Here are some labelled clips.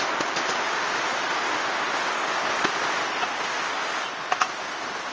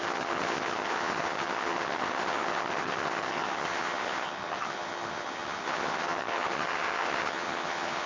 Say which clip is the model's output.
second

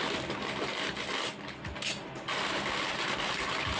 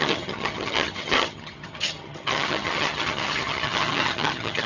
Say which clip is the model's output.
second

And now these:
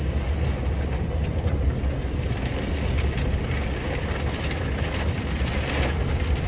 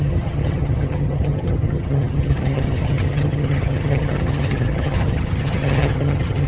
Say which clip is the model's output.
second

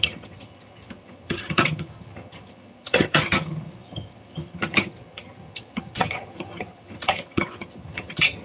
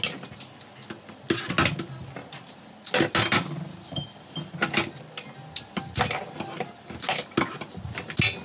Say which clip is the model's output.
first